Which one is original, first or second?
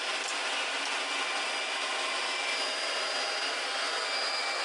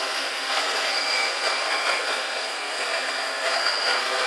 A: first